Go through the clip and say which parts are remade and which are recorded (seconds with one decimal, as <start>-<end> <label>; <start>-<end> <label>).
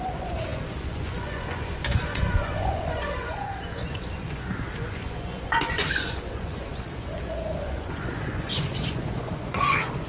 0.0-10.1 remade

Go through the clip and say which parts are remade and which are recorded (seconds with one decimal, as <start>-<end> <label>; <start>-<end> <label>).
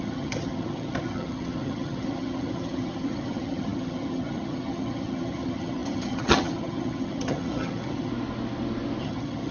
0.0-8.1 remade; 8.1-9.0 recorded; 9.0-9.5 remade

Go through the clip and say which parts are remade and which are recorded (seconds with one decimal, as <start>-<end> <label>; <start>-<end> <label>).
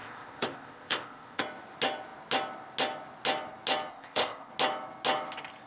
0.0-1.4 remade; 1.4-3.9 recorded; 3.9-4.5 remade; 4.5-5.7 recorded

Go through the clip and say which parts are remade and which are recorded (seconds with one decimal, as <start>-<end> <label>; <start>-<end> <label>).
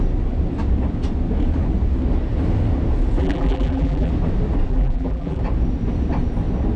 0.0-3.2 recorded; 3.2-4.1 remade; 4.1-4.7 recorded; 4.7-5.4 remade; 5.4-6.8 recorded